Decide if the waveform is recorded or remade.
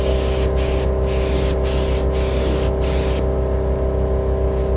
recorded